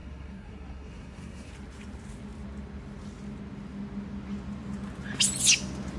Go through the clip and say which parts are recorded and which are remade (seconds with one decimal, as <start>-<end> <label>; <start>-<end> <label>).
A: 0.0-1.5 remade; 1.5-6.0 recorded